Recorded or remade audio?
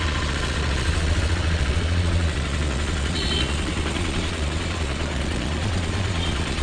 remade